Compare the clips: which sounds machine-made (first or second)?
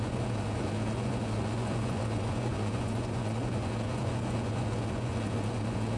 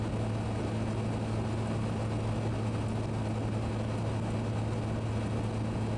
first